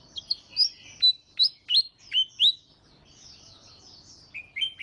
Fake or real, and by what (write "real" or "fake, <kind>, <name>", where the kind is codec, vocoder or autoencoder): real